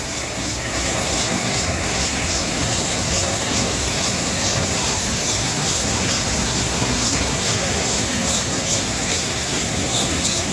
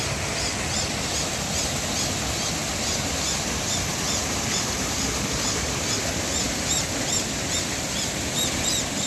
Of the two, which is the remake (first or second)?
first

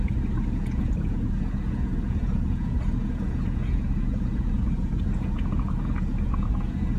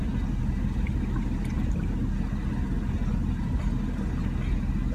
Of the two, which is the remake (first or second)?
first